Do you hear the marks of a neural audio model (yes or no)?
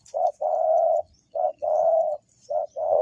yes